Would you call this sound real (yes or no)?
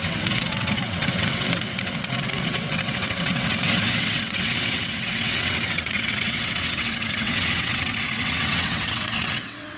no